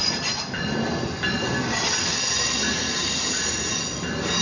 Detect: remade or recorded recorded